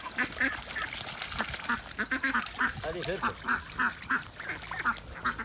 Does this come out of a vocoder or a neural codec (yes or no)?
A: no